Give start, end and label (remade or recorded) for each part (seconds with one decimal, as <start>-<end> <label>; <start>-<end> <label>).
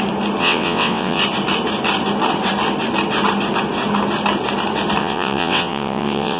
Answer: 0.0-0.4 recorded; 0.4-1.2 remade; 1.2-5.0 recorded; 5.0-6.4 remade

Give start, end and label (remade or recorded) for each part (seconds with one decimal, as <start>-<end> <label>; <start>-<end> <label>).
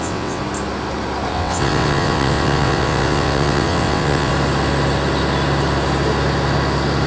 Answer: 0.0-0.4 remade; 0.4-1.3 recorded; 1.3-4.3 remade; 4.3-7.1 recorded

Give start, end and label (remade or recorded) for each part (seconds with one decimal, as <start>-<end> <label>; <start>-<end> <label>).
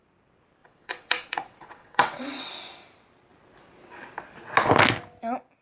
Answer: 0.0-0.6 recorded; 0.6-2.5 remade; 2.5-5.6 recorded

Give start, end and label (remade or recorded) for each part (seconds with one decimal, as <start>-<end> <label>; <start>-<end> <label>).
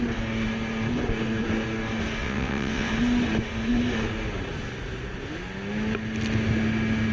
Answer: 0.0-2.2 recorded; 2.2-2.9 remade; 2.9-7.1 recorded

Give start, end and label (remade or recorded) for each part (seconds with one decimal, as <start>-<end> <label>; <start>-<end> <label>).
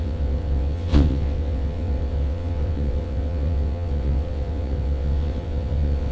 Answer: 0.0-6.1 remade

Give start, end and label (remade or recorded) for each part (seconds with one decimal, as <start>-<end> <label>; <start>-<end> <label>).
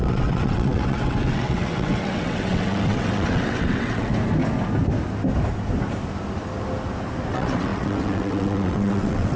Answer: 0.0-4.1 remade; 4.1-7.3 recorded; 7.3-9.4 remade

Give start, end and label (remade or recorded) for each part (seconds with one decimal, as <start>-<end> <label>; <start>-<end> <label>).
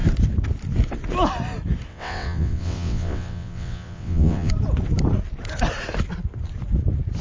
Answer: 0.0-1.9 recorded; 1.9-4.5 remade; 4.5-7.2 recorded